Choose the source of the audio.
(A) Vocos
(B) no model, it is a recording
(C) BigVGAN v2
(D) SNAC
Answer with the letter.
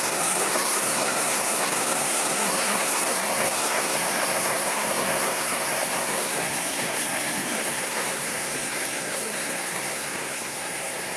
D